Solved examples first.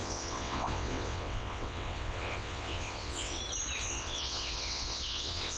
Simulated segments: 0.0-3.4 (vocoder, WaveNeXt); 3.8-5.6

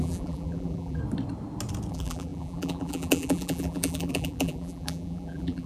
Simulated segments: 0.0-1.0 (vocoder, BigVGAN v2); 1.9-5.7

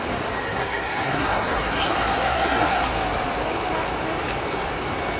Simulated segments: 0.4-2.9 (codec, SNAC)